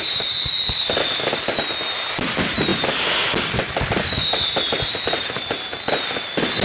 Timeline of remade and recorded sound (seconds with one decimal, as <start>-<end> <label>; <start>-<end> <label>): 0.0-6.6 recorded